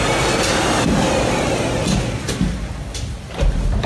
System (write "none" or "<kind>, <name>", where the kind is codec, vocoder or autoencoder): none